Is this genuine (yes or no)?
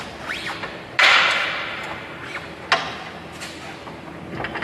yes